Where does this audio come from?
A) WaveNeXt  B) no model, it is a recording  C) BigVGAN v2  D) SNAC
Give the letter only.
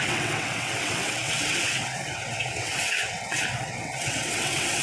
A